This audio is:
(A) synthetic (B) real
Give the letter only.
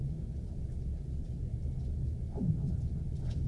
B